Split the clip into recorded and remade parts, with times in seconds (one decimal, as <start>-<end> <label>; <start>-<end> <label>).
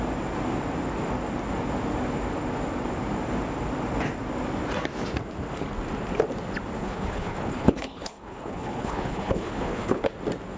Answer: 0.0-6.8 recorded; 6.8-10.1 remade; 10.1-10.6 recorded